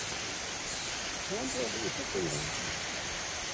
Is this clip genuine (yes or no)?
yes